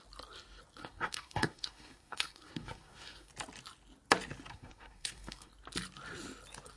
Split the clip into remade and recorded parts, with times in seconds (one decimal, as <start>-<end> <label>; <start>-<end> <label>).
0.0-0.8 recorded; 0.8-3.3 remade; 3.3-4.5 recorded; 4.5-5.5 remade; 5.5-6.8 recorded